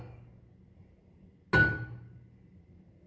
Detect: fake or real real